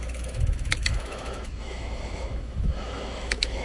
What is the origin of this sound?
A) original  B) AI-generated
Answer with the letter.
B